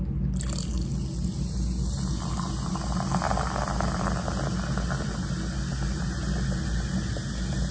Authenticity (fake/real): real